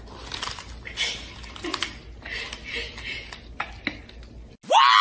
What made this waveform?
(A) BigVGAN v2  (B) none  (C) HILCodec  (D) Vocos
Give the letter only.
B